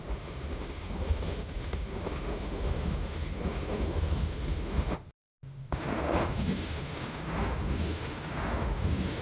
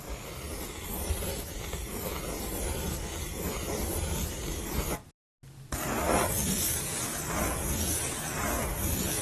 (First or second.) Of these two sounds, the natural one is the second